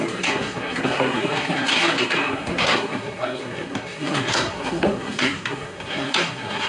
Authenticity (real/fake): fake